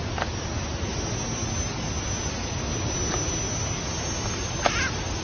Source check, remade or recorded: recorded